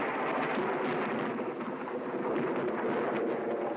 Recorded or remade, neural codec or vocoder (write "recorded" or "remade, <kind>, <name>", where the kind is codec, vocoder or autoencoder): recorded